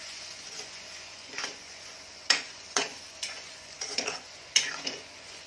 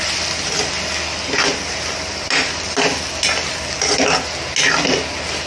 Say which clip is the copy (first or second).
first